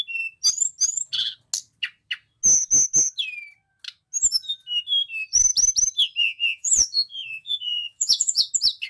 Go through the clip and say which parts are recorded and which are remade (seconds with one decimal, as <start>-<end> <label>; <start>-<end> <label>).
0.0-6.2 recorded; 6.2-8.5 remade; 8.5-8.9 recorded